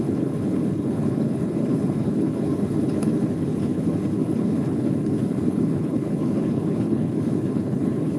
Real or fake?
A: fake